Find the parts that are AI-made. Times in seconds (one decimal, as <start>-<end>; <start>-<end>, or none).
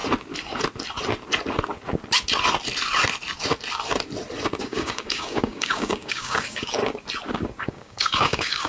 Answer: 4.6-6.8; 7.6-8.7